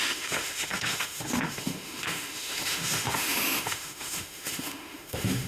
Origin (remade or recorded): remade